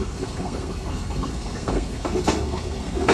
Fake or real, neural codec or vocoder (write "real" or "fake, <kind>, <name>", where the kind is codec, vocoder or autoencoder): fake, codec, SNAC